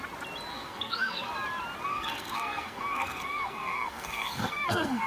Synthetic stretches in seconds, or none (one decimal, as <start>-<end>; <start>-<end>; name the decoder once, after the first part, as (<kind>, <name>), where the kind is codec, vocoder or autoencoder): 0.5-1.3 (codec, SNAC); 1.9-5.1